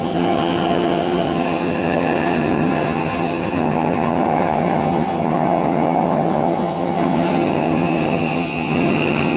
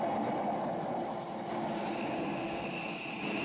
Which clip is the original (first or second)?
second